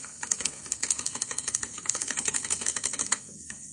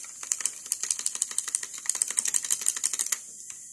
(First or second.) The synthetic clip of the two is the first